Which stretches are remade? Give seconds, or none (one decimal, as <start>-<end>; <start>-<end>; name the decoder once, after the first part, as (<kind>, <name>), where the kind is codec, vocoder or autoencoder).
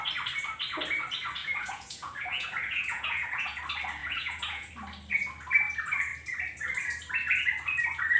1.4-3.6 (vocoder, Vocos); 4.0-4.7